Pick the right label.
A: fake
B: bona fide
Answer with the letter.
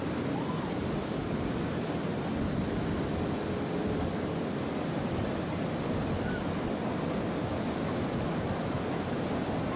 B